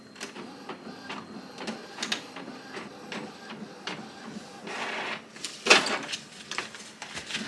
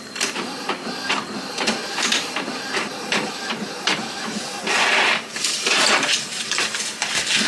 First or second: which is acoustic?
first